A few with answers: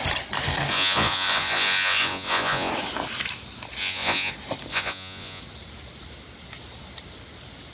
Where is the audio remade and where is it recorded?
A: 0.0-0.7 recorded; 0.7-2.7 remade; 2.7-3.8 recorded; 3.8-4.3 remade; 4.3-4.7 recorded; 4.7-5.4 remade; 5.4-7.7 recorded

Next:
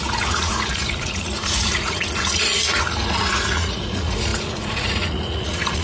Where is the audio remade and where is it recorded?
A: 0.0-5.8 remade

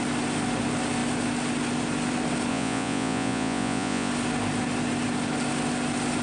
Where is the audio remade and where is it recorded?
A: 0.0-2.5 recorded; 2.5-4.1 remade; 4.1-6.2 recorded

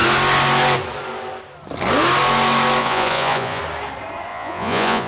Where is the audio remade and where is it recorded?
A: 0.0-2.8 recorded; 2.8-3.6 remade; 3.6-4.3 recorded; 4.3-5.1 remade

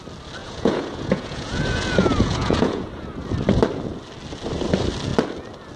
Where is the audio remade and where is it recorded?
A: 0.0-0.4 recorded; 0.4-2.9 remade; 2.9-5.8 recorded

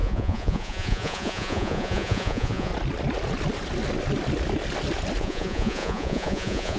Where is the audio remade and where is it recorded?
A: 0.0-2.7 remade; 2.7-5.2 recorded; 5.2-6.8 remade